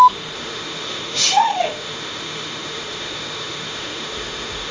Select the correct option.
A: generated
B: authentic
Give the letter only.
A